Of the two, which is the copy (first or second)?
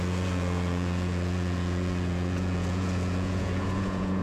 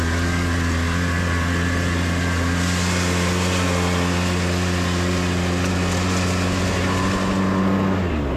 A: first